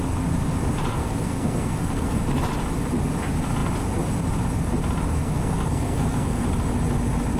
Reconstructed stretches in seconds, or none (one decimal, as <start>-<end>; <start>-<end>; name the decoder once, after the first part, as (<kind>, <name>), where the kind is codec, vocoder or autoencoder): 1.0-2.2 (codec, SNAC); 5.2-6.5